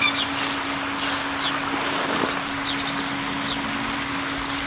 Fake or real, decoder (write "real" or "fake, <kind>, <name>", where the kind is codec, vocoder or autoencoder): real